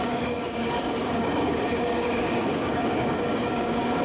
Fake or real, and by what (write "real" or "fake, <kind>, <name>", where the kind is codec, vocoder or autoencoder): fake, codec, DAC